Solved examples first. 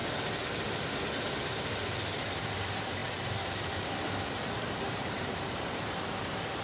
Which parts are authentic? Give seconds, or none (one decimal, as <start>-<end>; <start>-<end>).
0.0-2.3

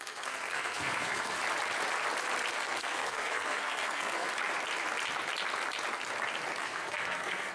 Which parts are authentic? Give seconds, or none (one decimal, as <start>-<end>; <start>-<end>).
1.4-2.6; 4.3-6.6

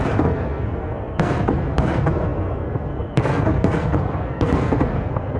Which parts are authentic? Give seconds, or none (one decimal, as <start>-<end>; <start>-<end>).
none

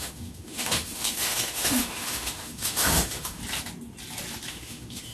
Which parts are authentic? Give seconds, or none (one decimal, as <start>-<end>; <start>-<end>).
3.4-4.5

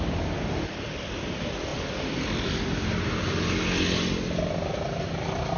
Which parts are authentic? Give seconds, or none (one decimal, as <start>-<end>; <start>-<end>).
0.0-1.7; 2.6-5.6

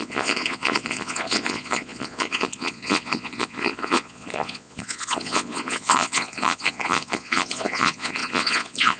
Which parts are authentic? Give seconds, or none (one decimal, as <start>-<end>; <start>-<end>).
none